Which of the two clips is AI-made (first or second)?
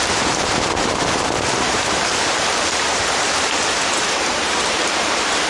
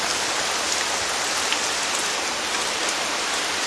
first